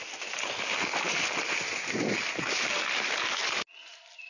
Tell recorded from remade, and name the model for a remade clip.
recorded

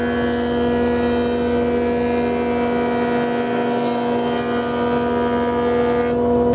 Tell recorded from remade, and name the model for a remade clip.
recorded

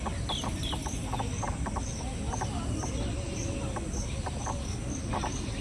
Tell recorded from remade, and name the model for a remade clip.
recorded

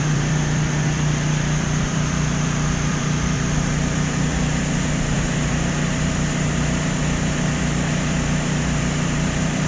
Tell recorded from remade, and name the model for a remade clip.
remade, vocoder, BigVGAN v2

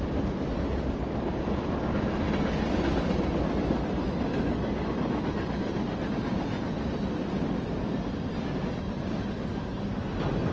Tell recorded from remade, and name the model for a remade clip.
recorded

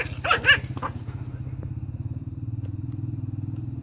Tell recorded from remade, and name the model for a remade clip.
recorded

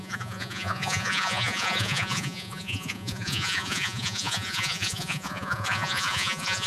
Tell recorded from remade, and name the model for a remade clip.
remade, vocoder, Vocos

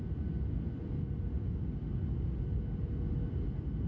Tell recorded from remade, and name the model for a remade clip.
recorded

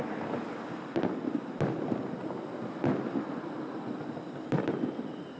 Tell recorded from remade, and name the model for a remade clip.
recorded